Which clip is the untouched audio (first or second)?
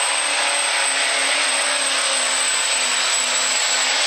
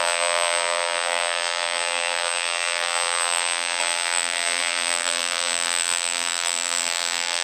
first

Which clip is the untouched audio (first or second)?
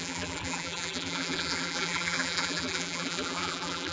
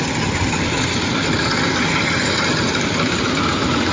second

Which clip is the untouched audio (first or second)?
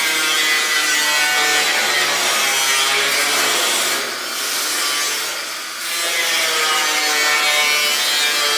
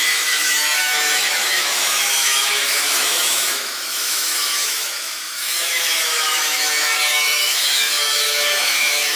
first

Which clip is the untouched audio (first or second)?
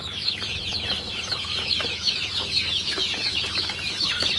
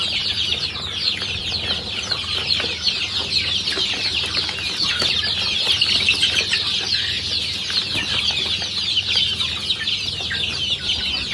second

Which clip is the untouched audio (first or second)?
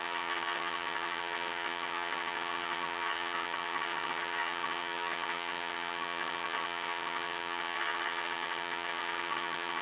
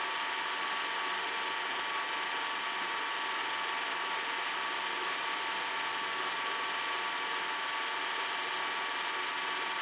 second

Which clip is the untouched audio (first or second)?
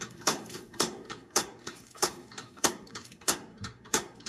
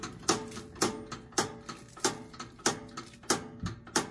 second